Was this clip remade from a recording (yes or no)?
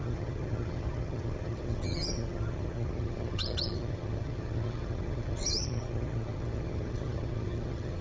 yes